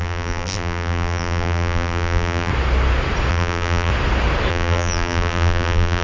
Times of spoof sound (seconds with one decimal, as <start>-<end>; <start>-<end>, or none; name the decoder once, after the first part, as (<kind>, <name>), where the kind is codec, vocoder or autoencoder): 0.0-2.5 (vocoder, BigVGAN v2); 3.3-3.9; 4.5-6.0